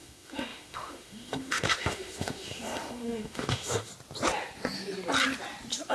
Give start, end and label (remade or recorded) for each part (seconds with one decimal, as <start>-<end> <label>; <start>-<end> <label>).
0.0-3.9 remade; 3.9-5.9 recorded